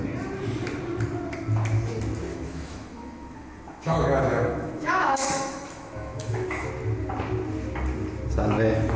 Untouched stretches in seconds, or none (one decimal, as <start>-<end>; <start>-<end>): 0.0-2.3; 6.7-9.0